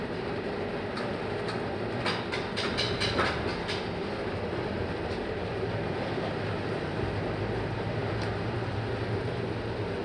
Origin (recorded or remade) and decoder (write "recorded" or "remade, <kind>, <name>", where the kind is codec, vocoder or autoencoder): recorded